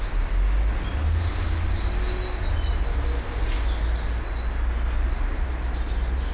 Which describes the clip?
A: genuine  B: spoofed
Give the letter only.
A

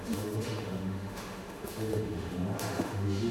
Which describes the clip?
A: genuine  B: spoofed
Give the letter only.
B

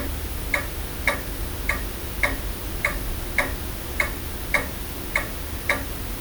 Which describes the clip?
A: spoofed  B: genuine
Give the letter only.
B